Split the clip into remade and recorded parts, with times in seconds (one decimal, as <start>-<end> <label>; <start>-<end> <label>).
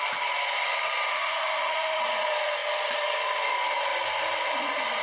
0.0-1.1 recorded; 1.1-2.0 remade; 2.0-5.0 recorded